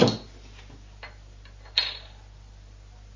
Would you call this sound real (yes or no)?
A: yes